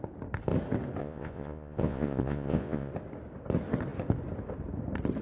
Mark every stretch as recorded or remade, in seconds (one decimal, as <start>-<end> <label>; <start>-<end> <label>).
0.0-1.0 recorded; 1.0-2.9 remade; 2.9-5.2 recorded